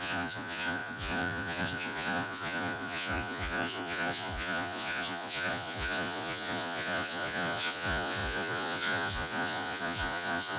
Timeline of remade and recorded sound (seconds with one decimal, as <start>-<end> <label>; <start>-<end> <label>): 0.0-10.6 remade